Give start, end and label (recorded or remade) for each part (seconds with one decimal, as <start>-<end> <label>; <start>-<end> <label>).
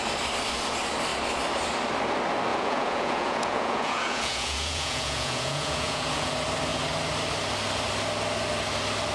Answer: 0.0-2.5 recorded; 2.5-6.3 remade; 6.3-9.1 recorded